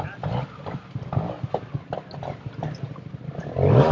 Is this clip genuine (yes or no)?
yes